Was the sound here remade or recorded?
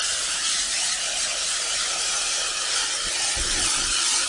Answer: recorded